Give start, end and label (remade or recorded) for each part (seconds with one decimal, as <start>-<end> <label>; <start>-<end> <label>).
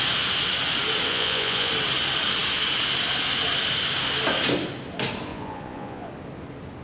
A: 0.0-1.1 recorded; 1.1-1.7 remade; 1.7-5.3 recorded; 5.3-6.1 remade; 6.1-6.8 recorded